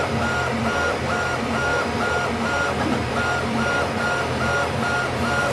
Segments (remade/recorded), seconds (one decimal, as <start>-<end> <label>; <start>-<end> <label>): 0.0-5.5 recorded